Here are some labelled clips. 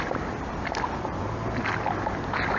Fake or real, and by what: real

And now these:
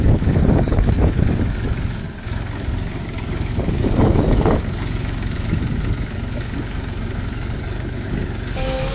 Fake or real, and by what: fake, codec, DAC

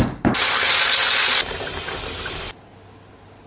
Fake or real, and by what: real